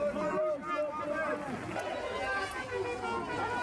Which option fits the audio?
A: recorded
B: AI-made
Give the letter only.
A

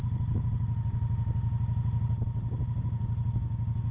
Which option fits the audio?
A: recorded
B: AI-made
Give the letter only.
A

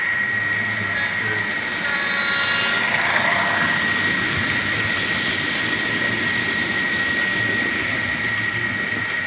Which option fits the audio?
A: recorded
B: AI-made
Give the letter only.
A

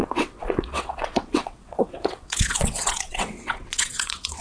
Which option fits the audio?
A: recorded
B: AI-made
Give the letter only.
B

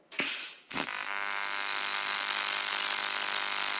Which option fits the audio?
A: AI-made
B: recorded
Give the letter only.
B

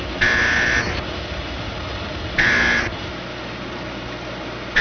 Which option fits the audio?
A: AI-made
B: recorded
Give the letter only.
B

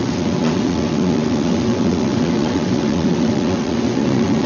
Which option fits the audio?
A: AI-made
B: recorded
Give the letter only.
A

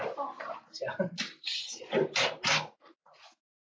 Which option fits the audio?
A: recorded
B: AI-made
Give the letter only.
A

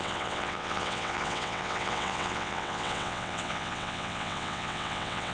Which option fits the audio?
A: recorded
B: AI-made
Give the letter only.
B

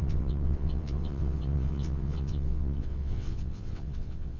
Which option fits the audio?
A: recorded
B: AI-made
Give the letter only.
B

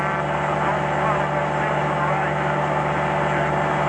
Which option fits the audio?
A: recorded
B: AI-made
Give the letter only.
A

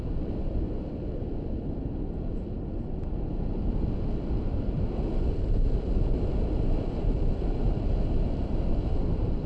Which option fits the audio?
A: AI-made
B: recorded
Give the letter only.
B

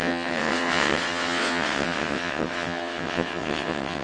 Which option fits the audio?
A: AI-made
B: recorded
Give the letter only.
A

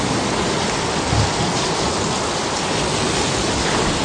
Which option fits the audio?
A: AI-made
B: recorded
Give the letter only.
B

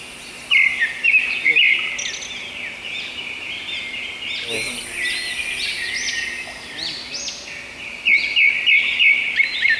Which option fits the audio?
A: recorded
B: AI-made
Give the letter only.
A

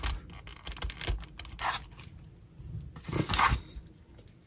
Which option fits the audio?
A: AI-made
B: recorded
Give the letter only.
B